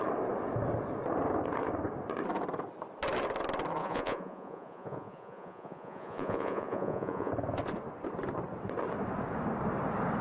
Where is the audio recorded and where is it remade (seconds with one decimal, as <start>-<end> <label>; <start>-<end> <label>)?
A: 0.0-3.8 recorded; 3.8-7.3 remade; 7.3-10.2 recorded